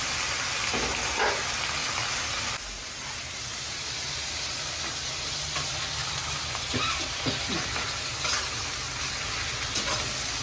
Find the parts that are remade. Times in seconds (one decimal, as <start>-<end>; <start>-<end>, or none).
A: 1.8-2.9; 3.5-5.3; 6.0-7.2